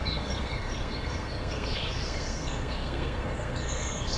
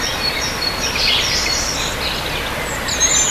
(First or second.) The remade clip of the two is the first